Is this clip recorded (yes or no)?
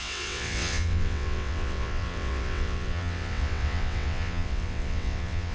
no